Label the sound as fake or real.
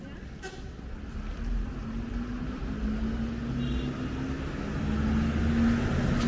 real